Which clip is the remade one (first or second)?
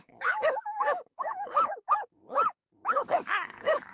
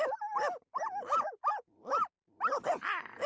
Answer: first